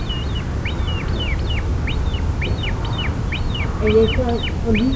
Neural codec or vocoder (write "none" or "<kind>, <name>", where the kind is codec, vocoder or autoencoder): none